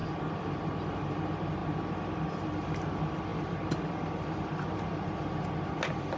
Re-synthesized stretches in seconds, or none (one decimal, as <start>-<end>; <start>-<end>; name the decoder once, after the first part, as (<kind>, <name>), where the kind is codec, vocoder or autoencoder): none